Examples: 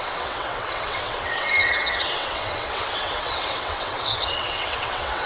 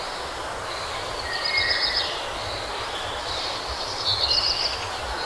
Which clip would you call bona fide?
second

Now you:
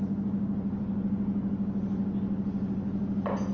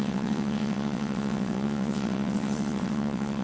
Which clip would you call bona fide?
first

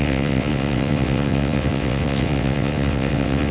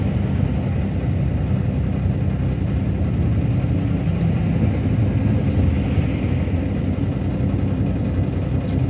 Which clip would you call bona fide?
second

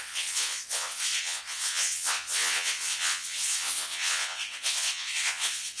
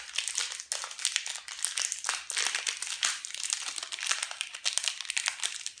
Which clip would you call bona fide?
second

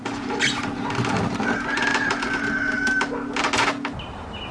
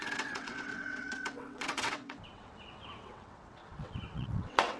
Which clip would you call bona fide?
first